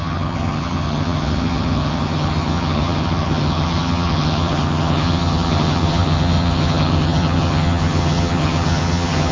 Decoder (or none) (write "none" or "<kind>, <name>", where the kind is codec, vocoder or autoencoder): vocoder, HiFi-GAN